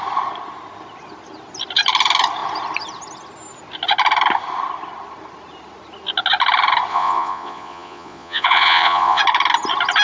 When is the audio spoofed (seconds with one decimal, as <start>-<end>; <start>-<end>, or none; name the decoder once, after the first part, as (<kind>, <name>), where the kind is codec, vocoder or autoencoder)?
6.9-9.2 (vocoder, Vocos)